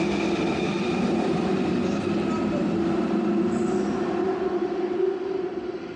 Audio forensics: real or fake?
real